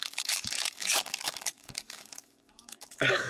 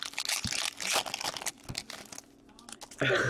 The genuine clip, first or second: second